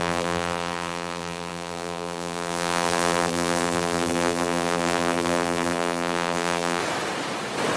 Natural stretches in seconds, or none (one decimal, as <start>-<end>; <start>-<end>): 6.8-7.8